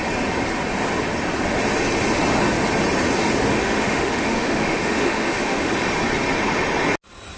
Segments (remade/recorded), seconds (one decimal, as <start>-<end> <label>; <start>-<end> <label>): 0.0-3.6 recorded; 3.6-5.7 remade; 5.7-7.4 recorded